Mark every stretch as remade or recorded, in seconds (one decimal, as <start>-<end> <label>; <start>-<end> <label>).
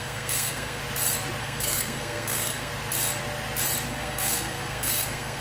0.0-0.8 remade; 0.8-1.4 recorded; 1.4-2.7 remade; 2.7-3.9 recorded; 3.9-5.4 remade